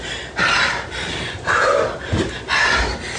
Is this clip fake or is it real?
real